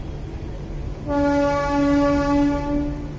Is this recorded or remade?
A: recorded